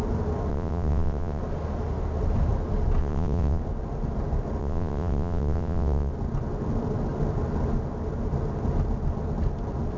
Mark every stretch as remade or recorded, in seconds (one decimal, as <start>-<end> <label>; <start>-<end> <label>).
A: 0.0-0.5 recorded; 0.5-1.4 remade; 1.4-3.0 recorded; 3.0-3.6 remade; 3.6-4.6 recorded; 4.6-6.1 remade; 6.1-10.0 recorded